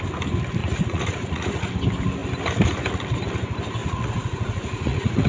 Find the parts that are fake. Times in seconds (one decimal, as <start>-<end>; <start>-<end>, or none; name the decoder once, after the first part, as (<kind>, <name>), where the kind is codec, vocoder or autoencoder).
0.6-1.7 (vocoder, Vocos); 3.8-5.3